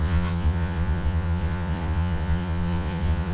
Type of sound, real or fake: fake